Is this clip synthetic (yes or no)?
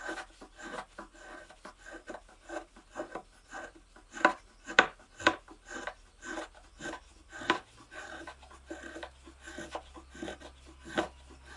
no